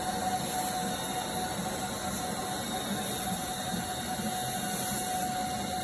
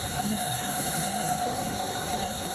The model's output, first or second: second